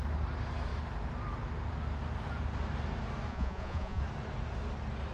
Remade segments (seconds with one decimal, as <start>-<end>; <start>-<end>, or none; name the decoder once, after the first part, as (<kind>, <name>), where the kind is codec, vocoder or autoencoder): 3.3-4.0 (vocoder, Vocos)